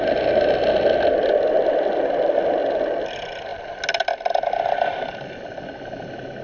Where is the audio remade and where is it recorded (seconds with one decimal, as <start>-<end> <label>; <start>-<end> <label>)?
0.0-6.4 recorded